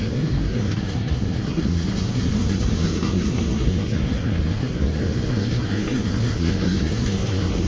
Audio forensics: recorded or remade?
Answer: remade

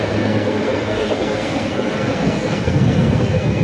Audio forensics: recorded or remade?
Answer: remade